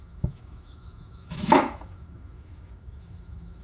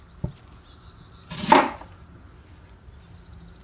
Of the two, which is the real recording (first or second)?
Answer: second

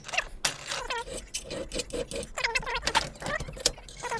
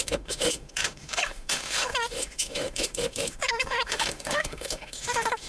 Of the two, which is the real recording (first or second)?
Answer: first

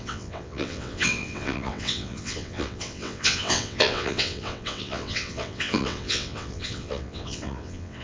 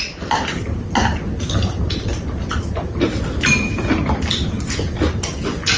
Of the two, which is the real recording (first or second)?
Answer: second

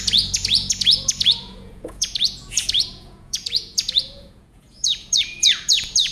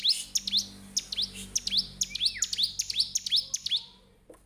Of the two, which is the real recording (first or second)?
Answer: second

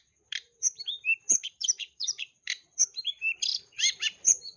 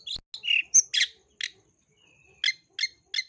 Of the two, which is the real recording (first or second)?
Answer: second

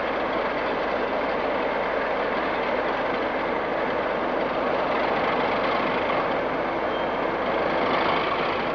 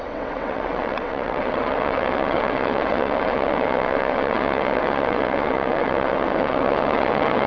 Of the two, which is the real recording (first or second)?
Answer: first